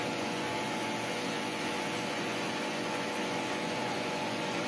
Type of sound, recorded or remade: remade